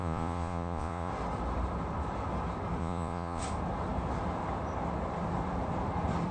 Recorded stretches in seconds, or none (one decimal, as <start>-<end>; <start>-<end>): 1.1-2.8; 3.4-6.3